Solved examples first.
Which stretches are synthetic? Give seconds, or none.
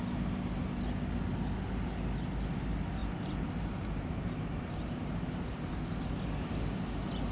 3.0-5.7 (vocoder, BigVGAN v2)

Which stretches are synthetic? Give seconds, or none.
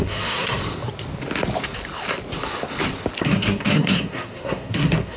0.0-0.6 (codec, SNAC); 3.2-5.2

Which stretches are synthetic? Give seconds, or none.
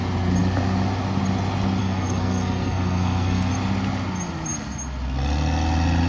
1.8-3.5 (codec, SNAC)